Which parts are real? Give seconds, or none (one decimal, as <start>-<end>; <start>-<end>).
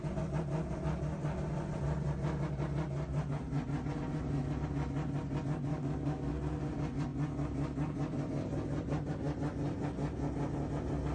0.0-5.7; 6.3-11.1